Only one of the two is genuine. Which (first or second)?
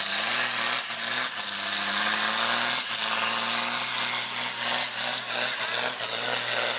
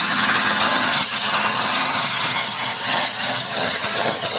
first